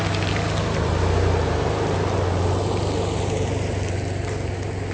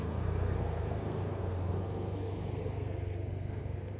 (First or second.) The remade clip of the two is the second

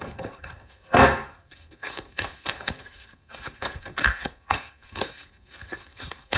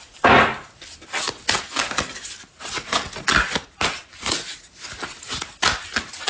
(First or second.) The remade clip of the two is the first